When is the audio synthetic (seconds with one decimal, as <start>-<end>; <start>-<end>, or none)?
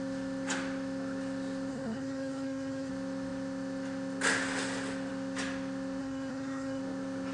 1.7-2.9; 6.0-6.8